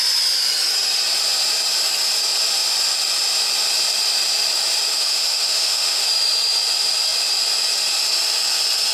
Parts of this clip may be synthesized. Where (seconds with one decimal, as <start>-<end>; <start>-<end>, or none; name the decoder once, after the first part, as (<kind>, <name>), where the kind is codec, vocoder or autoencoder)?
4.9-6.1 (autoencoder, DAC-VAE)

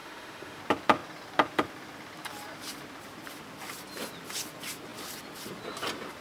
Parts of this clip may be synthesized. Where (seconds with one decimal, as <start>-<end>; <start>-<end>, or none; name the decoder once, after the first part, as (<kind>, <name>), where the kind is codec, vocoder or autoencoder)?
0.0-0.6 (autoencoder, DAC-VAE)